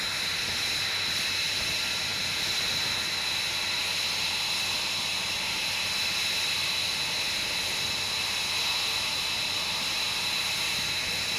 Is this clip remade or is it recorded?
recorded